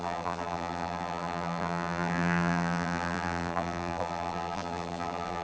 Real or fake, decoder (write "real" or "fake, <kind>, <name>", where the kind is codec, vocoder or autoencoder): fake, vocoder, BigVGAN v2